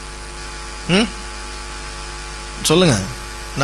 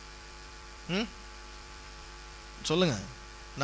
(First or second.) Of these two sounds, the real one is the first